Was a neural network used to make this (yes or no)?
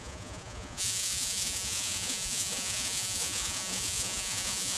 yes